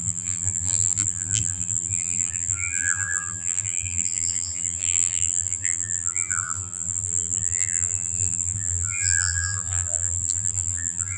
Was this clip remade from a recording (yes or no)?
yes